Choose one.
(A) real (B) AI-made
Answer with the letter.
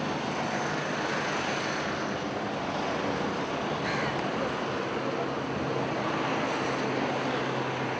A